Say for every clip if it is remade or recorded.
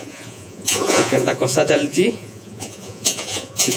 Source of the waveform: remade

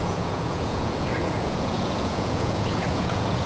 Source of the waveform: remade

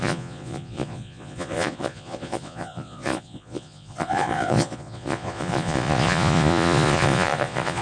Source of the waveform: remade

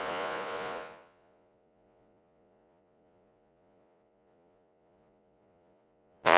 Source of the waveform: remade